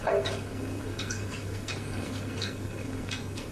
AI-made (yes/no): yes